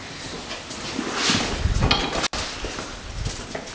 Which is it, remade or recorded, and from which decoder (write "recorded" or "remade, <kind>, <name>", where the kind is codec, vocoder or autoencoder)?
recorded